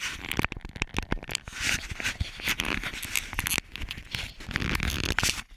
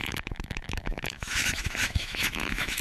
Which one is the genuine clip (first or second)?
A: first